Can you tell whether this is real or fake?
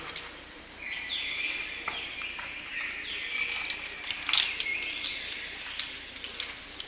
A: real